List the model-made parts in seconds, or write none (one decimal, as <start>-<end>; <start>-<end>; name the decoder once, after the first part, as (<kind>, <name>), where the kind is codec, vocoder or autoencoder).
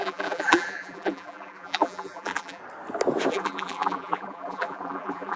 0.0-2.6 (vocoder, BigVGAN v2); 3.3-5.4